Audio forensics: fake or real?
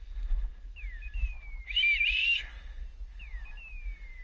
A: real